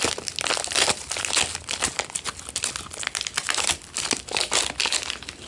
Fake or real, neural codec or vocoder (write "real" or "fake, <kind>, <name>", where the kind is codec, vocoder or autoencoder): real